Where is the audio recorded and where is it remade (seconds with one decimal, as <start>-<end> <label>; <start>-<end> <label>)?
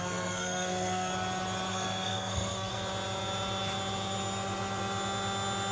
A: 0.0-1.1 remade; 1.1-1.7 recorded; 1.7-2.8 remade; 2.8-5.7 recorded